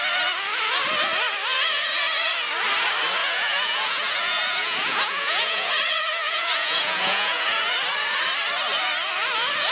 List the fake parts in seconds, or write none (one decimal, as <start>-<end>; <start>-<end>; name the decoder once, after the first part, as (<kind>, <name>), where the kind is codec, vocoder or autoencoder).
3.2-5.7 (vocoder, Vocos); 6.2-7.6